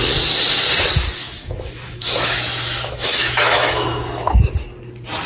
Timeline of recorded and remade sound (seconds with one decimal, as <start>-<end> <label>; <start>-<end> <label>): 0.0-1.2 recorded; 1.2-4.4 remade; 4.4-5.3 recorded